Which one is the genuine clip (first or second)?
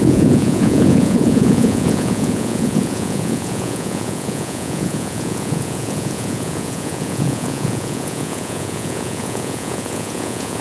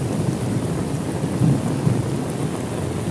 second